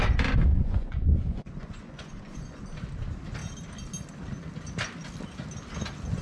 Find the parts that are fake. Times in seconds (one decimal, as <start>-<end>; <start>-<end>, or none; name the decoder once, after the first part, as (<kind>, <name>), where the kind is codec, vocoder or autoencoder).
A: 0.5-2.6 (vocoder, Vocos)